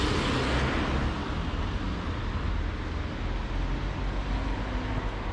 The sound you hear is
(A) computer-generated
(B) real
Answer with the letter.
B